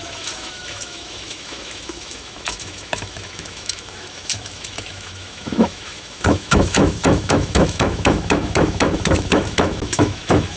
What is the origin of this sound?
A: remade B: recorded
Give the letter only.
A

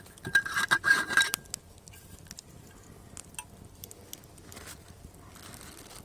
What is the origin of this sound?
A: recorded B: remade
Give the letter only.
A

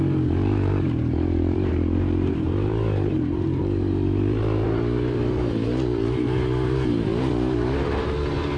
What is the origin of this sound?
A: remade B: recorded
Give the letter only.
A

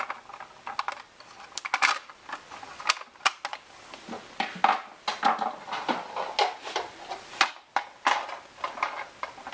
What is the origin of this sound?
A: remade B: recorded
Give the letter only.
B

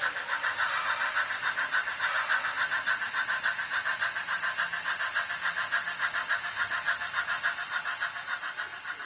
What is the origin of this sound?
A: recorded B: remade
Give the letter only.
A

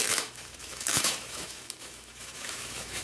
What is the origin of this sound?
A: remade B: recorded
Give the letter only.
A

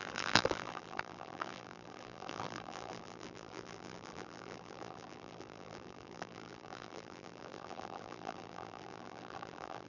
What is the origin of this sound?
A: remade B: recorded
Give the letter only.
A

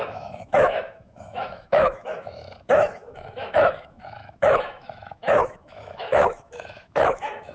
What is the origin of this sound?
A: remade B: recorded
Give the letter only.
A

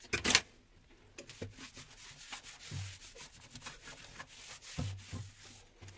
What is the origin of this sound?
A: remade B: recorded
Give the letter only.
B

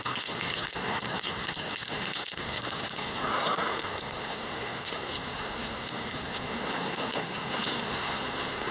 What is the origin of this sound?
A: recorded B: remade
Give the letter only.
B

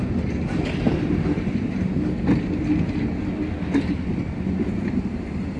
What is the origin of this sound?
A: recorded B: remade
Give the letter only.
A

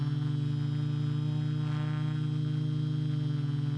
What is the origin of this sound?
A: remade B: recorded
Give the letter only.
B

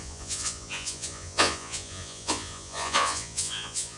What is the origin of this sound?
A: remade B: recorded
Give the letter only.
A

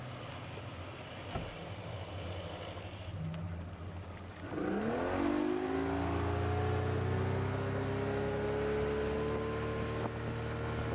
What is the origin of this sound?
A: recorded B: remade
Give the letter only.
A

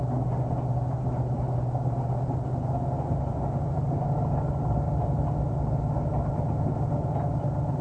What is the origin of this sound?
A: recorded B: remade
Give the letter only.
A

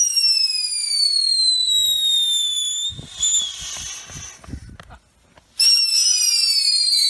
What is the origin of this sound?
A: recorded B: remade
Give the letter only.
A